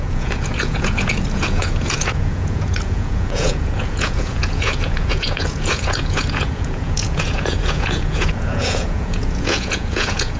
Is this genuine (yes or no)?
no